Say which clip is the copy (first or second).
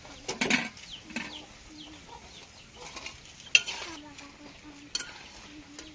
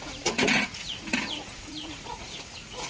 second